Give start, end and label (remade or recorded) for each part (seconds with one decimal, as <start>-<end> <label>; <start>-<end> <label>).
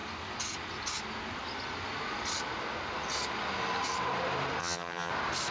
0.0-4.6 recorded; 4.6-5.1 remade; 5.1-5.5 recorded